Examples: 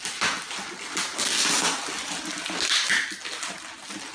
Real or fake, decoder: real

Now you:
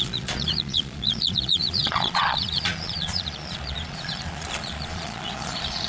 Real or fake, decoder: fake, vocoder, Vocos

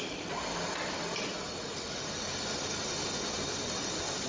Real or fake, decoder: real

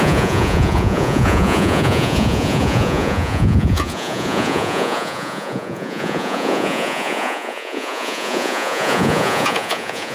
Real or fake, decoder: fake, vocoder, Vocos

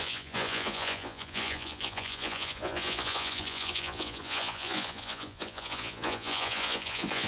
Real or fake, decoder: fake, vocoder, Vocos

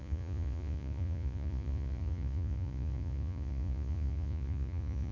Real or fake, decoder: fake, vocoder, Vocos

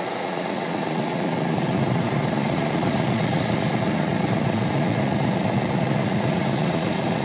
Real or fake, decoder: fake, vocoder, Vocos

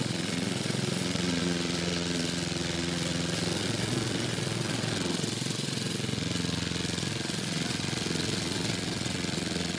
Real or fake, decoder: fake, vocoder, Vocos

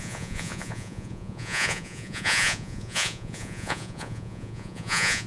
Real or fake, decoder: fake, vocoder, Vocos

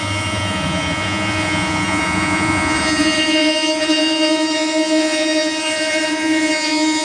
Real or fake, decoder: fake, vocoder, Vocos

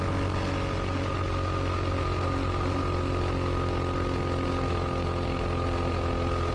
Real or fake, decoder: real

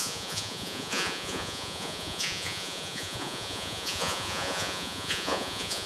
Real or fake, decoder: fake, vocoder, Vocos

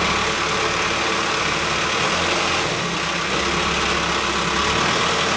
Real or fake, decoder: real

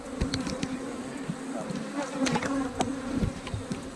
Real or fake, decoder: real